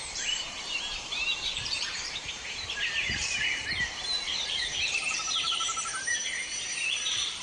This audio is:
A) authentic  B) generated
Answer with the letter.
B